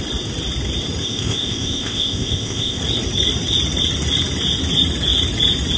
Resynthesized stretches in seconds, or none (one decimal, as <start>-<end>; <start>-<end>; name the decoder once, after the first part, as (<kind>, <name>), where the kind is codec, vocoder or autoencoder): 1.0-2.8 (codec, ZipCodec)